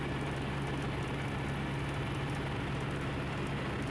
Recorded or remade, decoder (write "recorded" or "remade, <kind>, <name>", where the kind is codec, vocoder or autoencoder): recorded